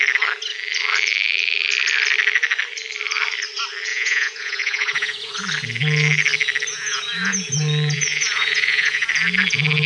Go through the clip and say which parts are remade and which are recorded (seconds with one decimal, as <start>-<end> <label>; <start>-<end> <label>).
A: 0.0-3.9 recorded; 3.9-5.3 remade; 5.3-6.7 recorded; 6.7-9.1 remade; 9.1-9.9 recorded

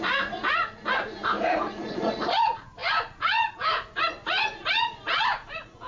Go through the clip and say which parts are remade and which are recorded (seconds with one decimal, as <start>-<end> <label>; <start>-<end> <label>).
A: 0.0-5.9 remade